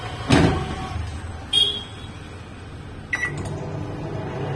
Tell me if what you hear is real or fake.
real